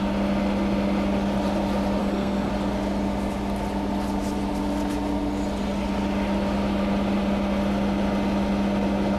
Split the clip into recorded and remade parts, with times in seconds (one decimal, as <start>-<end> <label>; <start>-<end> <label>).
0.0-2.0 recorded; 2.0-2.5 remade; 2.5-9.2 recorded